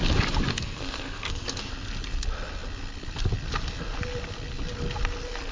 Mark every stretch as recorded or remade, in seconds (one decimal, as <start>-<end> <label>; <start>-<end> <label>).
0.0-0.5 recorded; 0.5-1.7 remade; 1.7-5.5 recorded